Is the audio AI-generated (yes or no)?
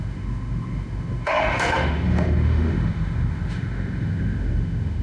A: yes